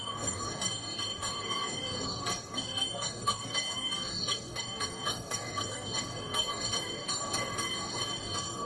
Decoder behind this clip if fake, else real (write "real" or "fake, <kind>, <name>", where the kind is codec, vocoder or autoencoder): fake, codec, DAC